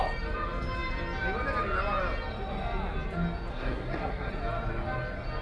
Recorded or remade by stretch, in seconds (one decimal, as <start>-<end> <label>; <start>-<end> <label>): 0.0-3.5 recorded; 3.5-4.3 remade; 4.3-5.4 recorded